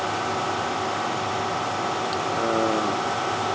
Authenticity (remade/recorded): recorded